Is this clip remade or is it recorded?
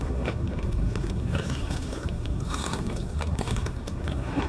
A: remade